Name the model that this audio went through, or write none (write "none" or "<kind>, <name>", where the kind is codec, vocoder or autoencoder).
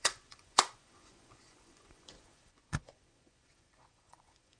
vocoder, Vocos